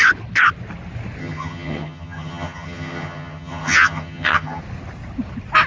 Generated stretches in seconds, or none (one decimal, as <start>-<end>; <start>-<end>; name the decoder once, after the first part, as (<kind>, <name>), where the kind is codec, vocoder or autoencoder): 1.2-4.6 (vocoder, HiFi-GAN)